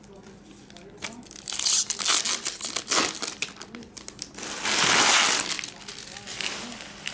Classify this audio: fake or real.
real